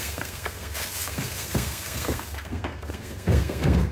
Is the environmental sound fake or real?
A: fake